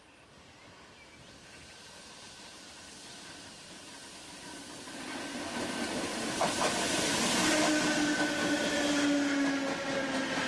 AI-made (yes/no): no